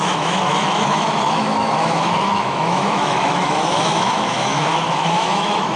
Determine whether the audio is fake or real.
fake